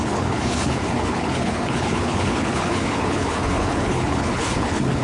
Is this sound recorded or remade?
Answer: remade